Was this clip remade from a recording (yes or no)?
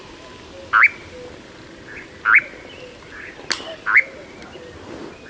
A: no